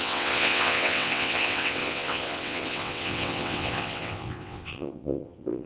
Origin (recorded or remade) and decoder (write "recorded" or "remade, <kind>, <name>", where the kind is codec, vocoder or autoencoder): remade, vocoder, WaveNeXt